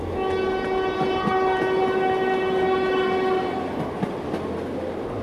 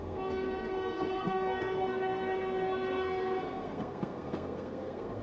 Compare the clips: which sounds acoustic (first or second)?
first